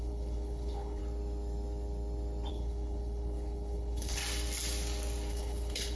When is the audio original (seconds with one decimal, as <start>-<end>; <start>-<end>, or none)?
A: 1.0-2.5; 4.2-5.3